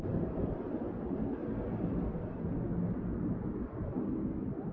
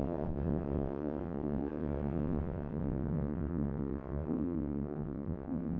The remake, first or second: second